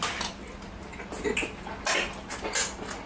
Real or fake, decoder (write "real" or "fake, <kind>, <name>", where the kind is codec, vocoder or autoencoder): real